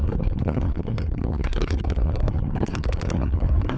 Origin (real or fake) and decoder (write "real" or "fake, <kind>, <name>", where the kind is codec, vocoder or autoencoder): fake, codec, SNAC